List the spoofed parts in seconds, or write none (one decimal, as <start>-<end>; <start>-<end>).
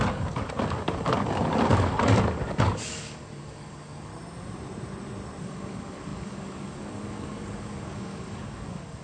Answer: 0.0-4.1; 5.4-9.0